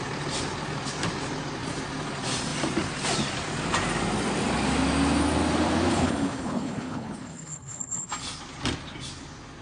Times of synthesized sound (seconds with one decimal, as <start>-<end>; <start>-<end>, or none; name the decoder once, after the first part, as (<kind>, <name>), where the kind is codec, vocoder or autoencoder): 5.9-8.1 (codec, HILCodec)